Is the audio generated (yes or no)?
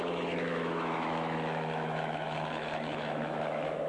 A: yes